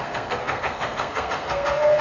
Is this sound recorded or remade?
remade